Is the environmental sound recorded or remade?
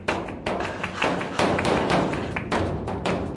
recorded